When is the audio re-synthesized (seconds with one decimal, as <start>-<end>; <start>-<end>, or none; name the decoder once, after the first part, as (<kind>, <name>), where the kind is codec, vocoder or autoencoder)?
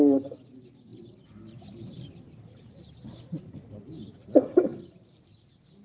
0.9-4.3 (vocoder, BigVGAN v2); 4.7-5.2